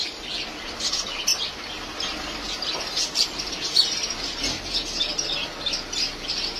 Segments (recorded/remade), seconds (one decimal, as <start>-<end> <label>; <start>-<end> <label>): 0.0-6.6 recorded